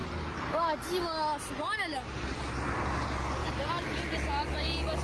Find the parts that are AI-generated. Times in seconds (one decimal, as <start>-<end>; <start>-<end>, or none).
none